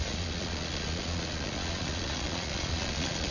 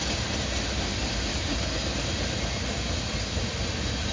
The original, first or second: second